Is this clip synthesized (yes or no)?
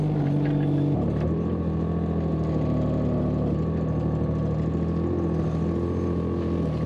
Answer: no